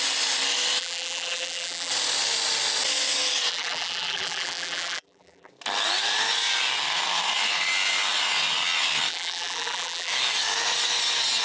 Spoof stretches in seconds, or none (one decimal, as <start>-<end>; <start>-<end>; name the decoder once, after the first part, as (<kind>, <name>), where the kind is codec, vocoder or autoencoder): 0.8-1.9 (vocoder, BigVGAN v2); 3.5-5.5; 9.1-10.1